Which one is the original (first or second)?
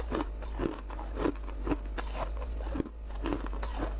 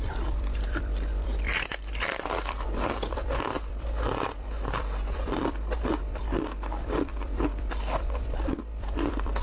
first